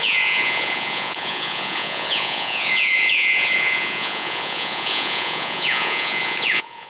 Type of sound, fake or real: fake